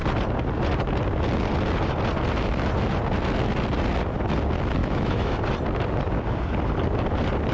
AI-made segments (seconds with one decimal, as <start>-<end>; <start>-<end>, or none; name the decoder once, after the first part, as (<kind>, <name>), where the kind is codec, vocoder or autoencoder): 4.8-5.4 (autoencoder, DAC-VAE)